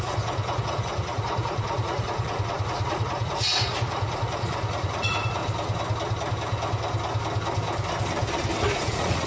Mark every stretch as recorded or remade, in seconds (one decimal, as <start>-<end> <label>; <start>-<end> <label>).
0.0-5.4 remade; 5.4-8.7 recorded; 8.7-9.3 remade